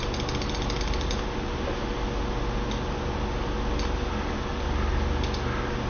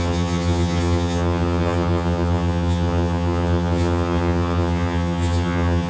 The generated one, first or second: second